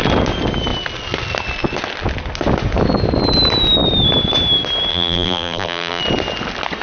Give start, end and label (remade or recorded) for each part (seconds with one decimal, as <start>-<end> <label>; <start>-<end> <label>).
0.0-4.9 recorded; 4.9-6.0 remade; 6.0-6.8 recorded